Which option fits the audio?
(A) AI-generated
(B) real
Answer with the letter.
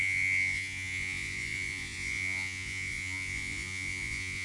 A